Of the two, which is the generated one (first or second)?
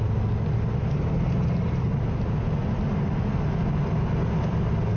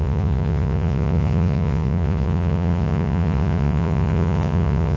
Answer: second